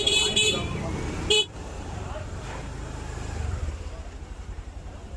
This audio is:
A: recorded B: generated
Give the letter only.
B